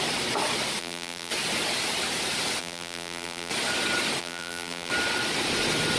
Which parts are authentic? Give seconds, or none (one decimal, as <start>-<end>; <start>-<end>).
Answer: 0.0-0.8; 1.3-2.6; 3.5-4.2; 4.9-6.0